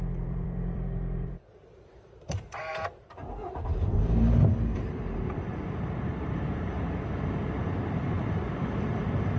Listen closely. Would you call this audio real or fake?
fake